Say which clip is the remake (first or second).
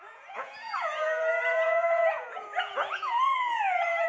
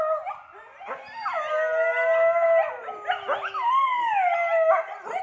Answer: first